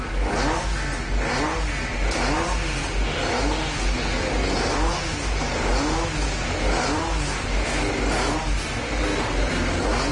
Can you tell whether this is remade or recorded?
recorded